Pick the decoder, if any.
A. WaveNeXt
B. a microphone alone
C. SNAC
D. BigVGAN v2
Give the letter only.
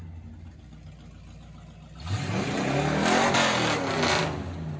B